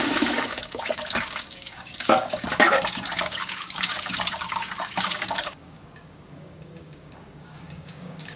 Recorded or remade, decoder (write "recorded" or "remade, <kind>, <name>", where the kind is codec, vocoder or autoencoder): remade, codec, DAC